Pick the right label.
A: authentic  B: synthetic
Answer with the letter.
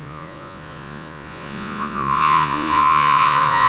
B